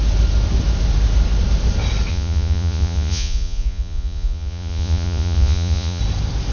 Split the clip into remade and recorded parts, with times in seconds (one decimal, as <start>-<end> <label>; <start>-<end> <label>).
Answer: 0.0-2.1 recorded; 2.1-6.0 remade; 6.0-6.5 recorded